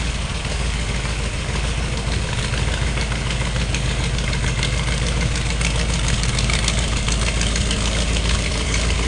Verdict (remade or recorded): remade